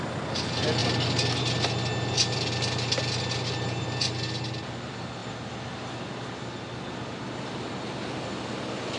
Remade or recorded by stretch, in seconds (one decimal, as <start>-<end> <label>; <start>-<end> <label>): 0.0-9.0 recorded